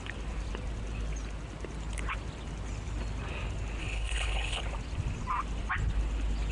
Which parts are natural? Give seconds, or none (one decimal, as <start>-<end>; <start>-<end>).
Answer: 0.0-3.8; 4.6-6.5